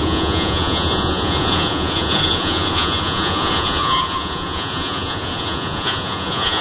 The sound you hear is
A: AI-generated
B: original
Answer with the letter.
A